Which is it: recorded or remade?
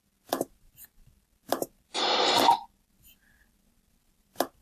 recorded